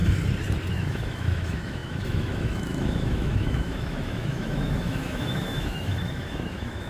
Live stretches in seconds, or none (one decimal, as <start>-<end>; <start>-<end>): 0.0-0.7